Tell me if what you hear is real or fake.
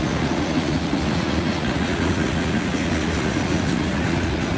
fake